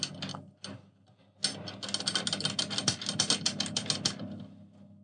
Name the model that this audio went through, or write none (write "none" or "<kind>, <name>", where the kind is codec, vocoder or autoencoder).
none